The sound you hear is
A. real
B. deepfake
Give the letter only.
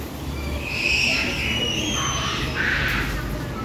A